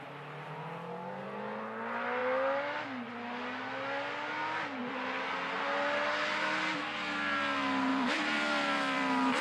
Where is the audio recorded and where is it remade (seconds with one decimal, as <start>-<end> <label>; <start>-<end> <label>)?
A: 0.0-7.9 recorded; 7.9-9.4 remade